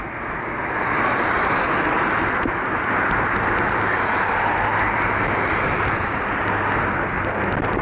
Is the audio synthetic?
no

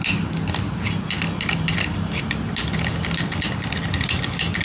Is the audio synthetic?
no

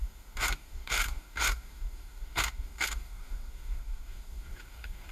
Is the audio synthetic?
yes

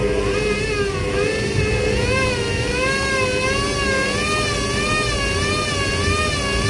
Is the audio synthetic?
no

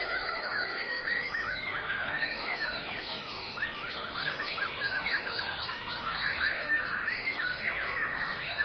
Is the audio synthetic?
yes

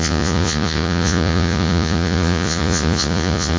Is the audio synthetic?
yes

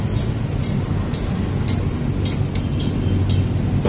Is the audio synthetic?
no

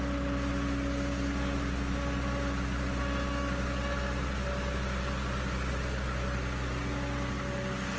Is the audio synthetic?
no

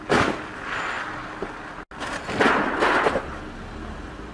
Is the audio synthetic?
no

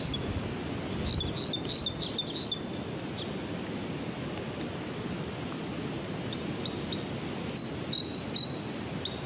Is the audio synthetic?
no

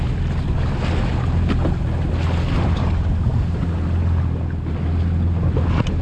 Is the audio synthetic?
no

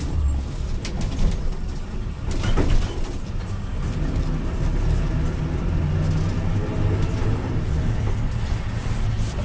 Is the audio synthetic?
no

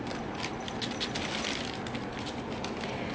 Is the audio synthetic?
no